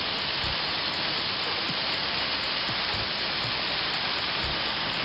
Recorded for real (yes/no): yes